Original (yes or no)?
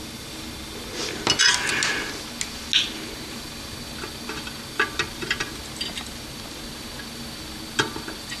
yes